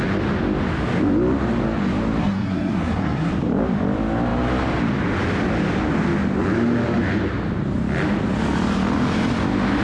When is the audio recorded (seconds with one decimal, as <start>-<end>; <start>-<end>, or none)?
0.0-2.2; 3.3-9.8